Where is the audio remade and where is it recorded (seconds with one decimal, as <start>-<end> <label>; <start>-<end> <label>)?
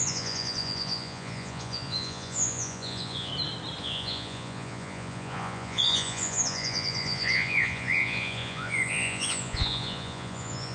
0.0-3.3 remade; 3.3-3.8 recorded; 3.8-10.7 remade